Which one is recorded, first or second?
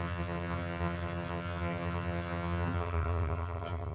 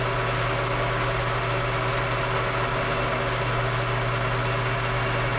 second